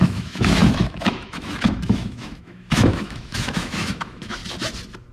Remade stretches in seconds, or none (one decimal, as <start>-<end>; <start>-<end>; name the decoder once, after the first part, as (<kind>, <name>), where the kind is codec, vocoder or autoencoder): 0.0-4.4 (autoencoder, DAC-VAE)